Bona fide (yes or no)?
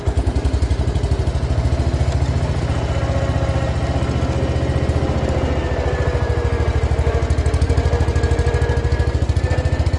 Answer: yes